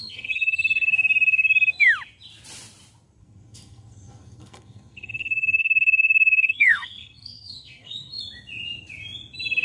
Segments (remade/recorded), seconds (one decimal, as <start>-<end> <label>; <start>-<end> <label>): 0.0-0.9 remade; 0.9-3.2 recorded; 3.2-8.2 remade; 8.2-9.6 recorded